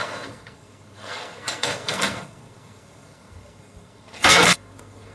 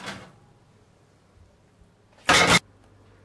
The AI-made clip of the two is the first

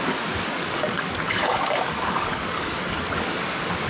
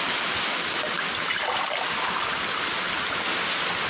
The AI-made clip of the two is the first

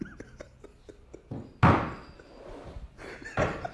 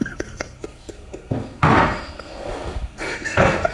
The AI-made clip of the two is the second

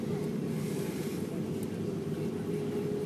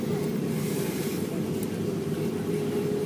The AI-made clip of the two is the second